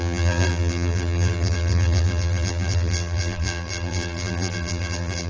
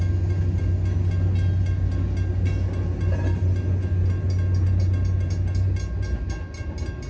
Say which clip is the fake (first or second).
first